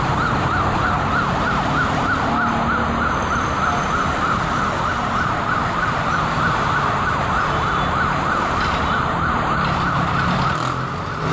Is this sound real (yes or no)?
yes